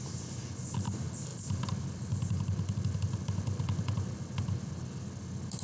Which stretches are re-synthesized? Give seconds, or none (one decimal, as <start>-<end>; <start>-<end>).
none